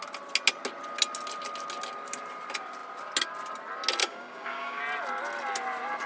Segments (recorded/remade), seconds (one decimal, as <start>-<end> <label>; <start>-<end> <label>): 0.0-4.0 recorded; 4.0-4.8 remade; 4.8-6.1 recorded